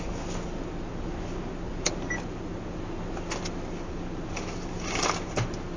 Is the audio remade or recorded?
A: recorded